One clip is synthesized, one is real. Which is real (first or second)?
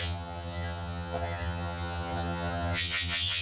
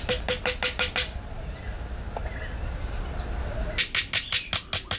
second